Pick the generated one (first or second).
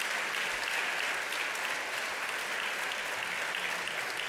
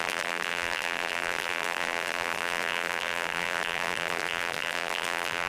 second